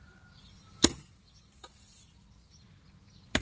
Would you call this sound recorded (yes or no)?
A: yes